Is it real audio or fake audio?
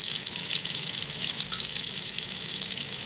fake